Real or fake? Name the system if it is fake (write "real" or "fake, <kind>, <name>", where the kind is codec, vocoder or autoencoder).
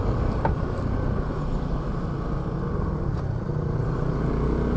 real